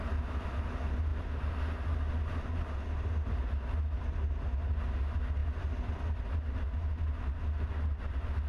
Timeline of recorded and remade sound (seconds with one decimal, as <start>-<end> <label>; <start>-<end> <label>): 0.0-8.5 recorded